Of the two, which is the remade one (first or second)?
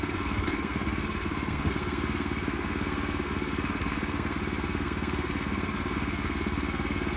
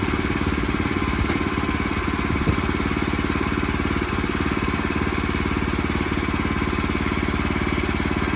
first